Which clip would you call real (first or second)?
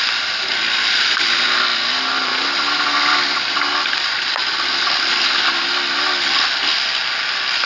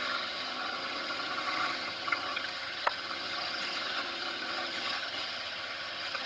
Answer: first